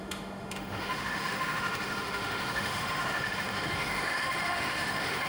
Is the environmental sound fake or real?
fake